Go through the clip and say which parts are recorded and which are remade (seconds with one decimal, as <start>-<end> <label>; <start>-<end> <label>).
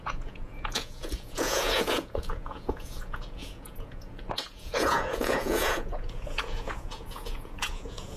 0.0-8.2 remade